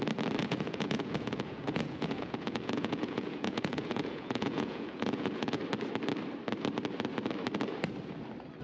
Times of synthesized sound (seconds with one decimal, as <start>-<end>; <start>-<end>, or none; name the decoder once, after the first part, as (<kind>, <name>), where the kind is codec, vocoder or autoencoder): 0.4-5.6 (vocoder, Vocos)